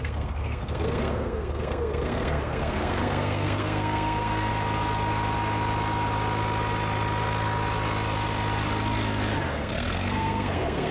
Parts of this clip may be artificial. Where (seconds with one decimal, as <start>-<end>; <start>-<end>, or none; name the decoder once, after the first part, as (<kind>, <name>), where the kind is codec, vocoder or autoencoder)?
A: 0.0-4.5 (codec, SNAC); 9.5-10.9